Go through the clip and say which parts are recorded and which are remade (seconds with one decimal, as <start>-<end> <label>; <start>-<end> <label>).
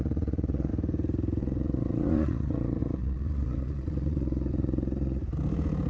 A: 0.0-0.7 remade; 0.7-1.4 recorded; 1.4-5.2 remade; 5.2-5.9 recorded